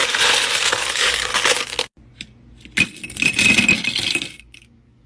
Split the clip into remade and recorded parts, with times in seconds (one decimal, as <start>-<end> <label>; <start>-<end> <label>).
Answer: 0.0-0.7 recorded; 0.7-1.3 remade; 1.3-4.4 recorded; 4.4-5.1 remade

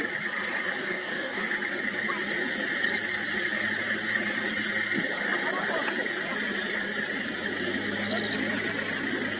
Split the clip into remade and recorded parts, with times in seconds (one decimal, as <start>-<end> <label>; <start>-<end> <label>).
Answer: 0.0-0.8 recorded; 0.8-1.4 remade; 1.4-9.4 recorded